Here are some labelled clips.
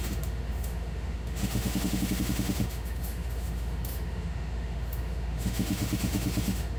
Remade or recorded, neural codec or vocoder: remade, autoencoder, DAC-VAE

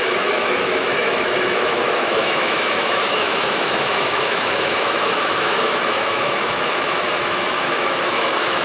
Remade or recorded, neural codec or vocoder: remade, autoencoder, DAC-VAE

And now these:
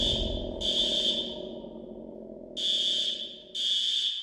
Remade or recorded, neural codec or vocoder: recorded